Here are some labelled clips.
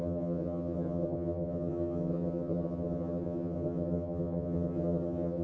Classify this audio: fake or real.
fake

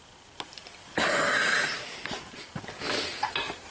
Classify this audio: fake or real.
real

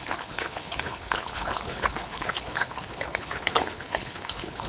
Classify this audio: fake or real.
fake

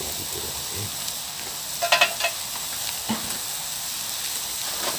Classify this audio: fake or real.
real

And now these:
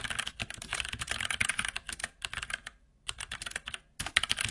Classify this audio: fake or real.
real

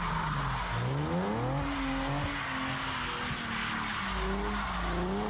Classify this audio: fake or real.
real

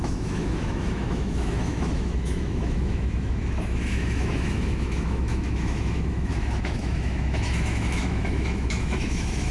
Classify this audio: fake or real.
fake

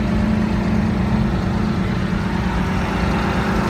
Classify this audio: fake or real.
real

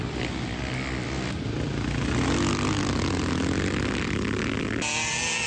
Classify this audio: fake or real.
real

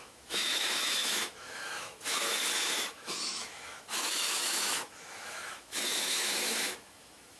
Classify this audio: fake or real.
fake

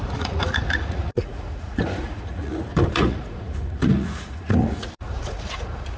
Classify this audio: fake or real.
fake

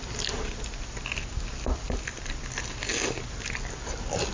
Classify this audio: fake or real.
real